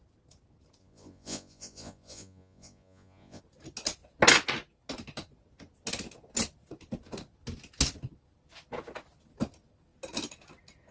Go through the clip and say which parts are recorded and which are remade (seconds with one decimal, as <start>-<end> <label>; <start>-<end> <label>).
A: 0.0-0.8 recorded; 0.8-3.4 remade; 3.4-10.9 recorded